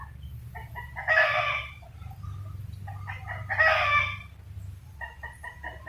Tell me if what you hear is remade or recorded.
recorded